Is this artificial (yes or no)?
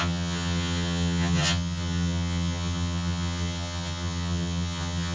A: yes